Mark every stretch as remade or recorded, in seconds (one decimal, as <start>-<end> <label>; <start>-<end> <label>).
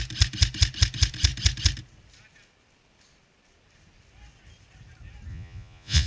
0.0-5.3 recorded; 5.3-6.1 remade